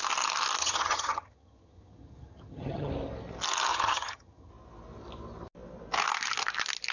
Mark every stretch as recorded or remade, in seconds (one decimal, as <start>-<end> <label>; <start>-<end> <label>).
0.0-0.6 recorded; 0.6-2.9 remade; 2.9-3.7 recorded; 3.7-4.5 remade; 4.5-6.9 recorded